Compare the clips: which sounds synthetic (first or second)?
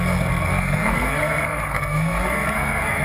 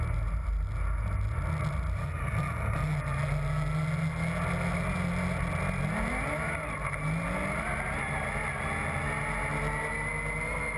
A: first